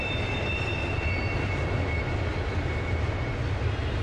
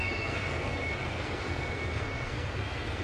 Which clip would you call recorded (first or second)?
first